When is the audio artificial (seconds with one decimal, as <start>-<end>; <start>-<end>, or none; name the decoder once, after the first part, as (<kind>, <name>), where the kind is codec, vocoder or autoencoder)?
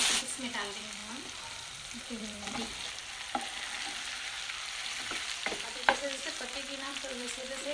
0.0-7.7 (vocoder, BigVGAN v2)